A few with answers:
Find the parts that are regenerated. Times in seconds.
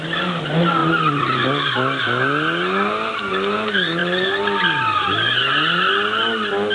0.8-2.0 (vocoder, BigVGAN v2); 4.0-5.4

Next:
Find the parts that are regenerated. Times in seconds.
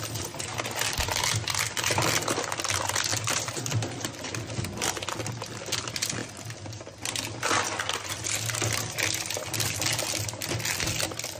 3.1-4.1 (vocoder, BigVGAN v2)